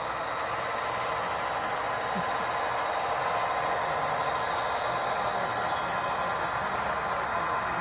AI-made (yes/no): no